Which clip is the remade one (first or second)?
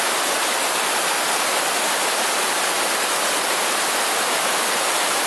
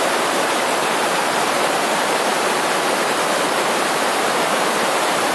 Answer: second